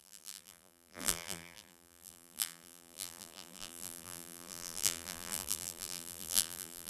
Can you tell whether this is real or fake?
fake